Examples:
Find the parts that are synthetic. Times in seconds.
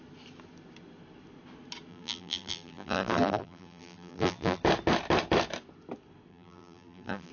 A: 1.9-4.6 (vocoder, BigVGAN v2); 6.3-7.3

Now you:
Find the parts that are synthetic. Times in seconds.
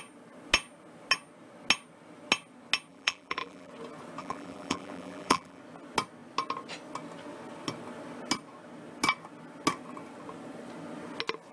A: 2.9-3.7 (vocoder, BigVGAN v2); 4.2-5.6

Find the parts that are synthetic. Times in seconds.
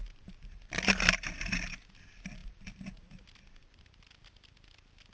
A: none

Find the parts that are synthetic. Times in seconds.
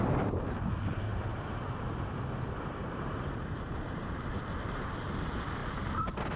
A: 1.1-4.3 (vocoder, BigVGAN v2)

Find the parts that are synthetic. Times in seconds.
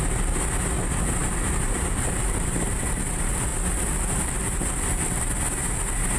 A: 1.2-3.1 (vocoder, BigVGAN v2); 3.5-5.3